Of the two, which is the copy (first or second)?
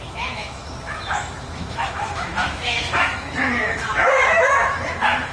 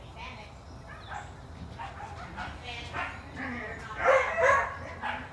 first